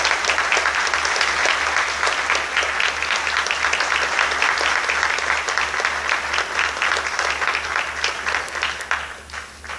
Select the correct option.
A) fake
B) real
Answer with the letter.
B